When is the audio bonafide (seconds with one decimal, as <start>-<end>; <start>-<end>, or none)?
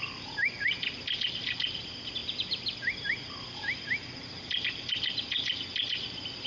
0.0-6.5